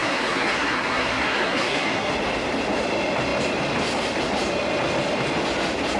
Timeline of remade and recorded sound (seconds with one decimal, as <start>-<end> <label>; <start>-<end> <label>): 0.0-2.1 remade; 2.1-6.0 recorded